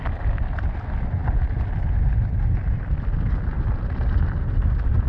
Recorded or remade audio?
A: recorded